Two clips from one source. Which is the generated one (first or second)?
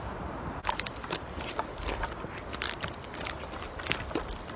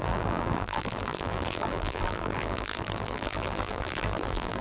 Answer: second